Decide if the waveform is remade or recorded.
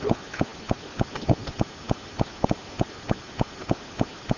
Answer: recorded